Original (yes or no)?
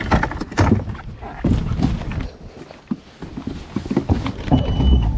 yes